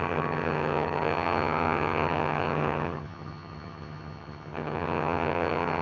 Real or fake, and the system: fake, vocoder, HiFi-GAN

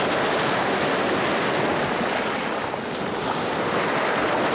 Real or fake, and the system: real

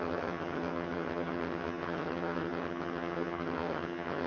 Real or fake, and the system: fake, vocoder, HiFi-GAN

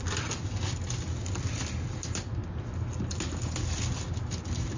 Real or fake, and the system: real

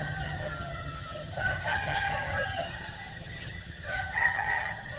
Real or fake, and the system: fake, vocoder, HiFi-GAN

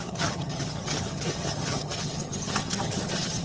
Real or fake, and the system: fake, vocoder, HiFi-GAN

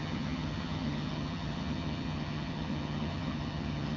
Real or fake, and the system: fake, vocoder, HiFi-GAN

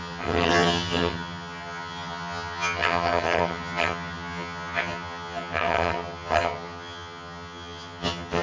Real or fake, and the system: fake, vocoder, HiFi-GAN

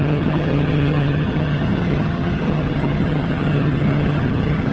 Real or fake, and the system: fake, vocoder, HiFi-GAN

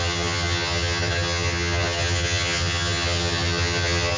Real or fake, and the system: fake, vocoder, HiFi-GAN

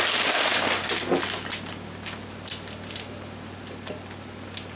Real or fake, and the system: real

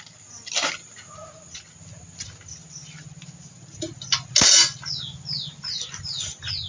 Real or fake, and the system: real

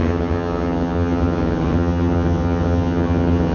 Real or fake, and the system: fake, vocoder, HiFi-GAN